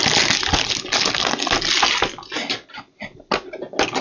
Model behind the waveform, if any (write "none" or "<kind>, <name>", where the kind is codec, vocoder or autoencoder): none